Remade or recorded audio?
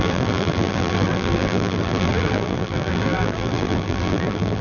remade